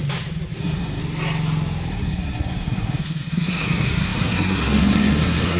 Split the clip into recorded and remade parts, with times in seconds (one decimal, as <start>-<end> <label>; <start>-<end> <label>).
0.0-0.6 recorded; 0.6-1.0 remade; 1.0-1.9 recorded; 1.9-5.6 remade

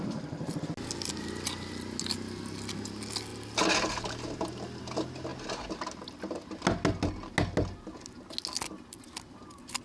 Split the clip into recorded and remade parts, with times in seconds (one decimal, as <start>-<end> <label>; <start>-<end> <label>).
0.0-9.8 recorded

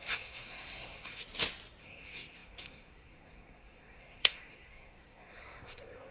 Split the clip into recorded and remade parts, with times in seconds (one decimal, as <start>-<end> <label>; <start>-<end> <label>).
0.0-1.2 remade; 1.2-1.8 recorded; 1.8-6.1 remade

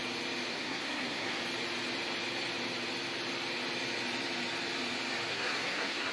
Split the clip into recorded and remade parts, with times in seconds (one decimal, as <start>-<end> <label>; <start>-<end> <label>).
0.0-0.5 recorded; 0.5-1.4 remade; 1.4-5.3 recorded; 5.3-6.1 remade

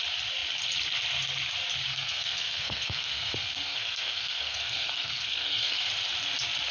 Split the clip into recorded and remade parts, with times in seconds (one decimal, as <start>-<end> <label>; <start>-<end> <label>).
0.0-1.9 recorded; 1.9-5.9 remade; 5.9-6.7 recorded

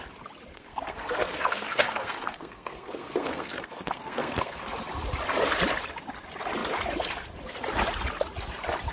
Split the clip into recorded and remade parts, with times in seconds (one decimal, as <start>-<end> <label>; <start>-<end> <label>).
0.0-0.5 recorded; 0.5-4.6 remade; 4.6-8.9 recorded

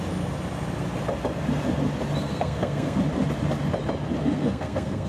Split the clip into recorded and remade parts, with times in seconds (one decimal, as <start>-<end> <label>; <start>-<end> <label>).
0.0-2.2 recorded; 2.2-3.0 remade; 3.0-4.2 recorded; 4.2-5.1 remade